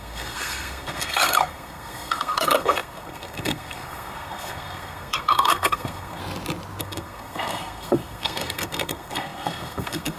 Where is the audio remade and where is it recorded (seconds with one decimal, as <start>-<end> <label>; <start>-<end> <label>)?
0.0-6.2 remade; 6.2-6.8 recorded; 6.8-10.2 remade